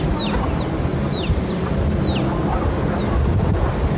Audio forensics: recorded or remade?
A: recorded